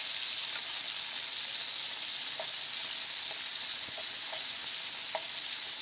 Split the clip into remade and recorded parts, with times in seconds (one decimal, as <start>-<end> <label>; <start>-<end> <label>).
0.0-3.5 recorded; 3.5-4.6 remade; 4.6-5.8 recorded

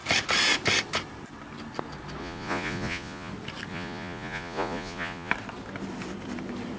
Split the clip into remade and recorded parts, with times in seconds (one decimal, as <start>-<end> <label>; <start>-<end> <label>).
0.0-2.2 recorded; 2.2-3.3 remade; 3.3-3.7 recorded; 3.7-5.3 remade; 5.3-6.8 recorded

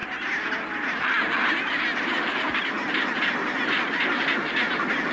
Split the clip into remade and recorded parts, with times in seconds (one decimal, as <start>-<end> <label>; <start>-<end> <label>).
0.0-5.1 recorded

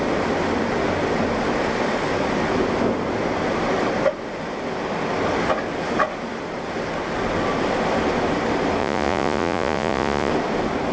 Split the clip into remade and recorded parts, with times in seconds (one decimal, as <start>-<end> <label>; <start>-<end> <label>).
0.0-8.8 recorded; 8.8-10.3 remade; 10.3-10.9 recorded

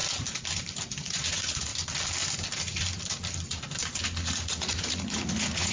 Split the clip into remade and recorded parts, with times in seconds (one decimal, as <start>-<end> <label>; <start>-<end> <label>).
0.0-1.0 recorded; 1.0-1.7 remade; 1.7-4.2 recorded; 4.2-5.7 remade

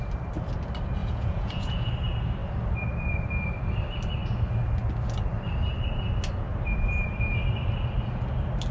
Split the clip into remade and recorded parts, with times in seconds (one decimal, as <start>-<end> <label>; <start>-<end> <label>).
0.0-1.0 recorded; 1.0-1.9 remade; 1.9-8.7 recorded